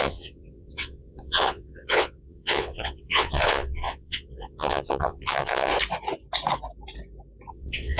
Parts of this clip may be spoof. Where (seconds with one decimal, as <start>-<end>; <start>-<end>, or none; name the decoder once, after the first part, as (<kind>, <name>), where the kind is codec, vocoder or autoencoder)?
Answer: 0.0-5.7 (vocoder, WaveNeXt); 7.5-8.0